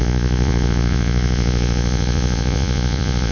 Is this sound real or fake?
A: fake